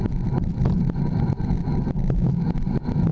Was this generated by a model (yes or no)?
no